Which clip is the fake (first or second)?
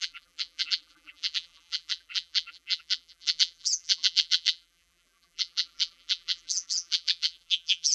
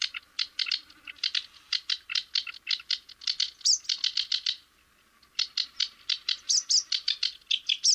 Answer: first